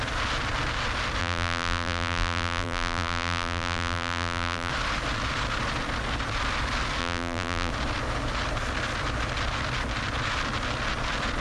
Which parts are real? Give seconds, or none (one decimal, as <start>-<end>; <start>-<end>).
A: 0.0-1.2; 4.7-7.0; 7.7-11.4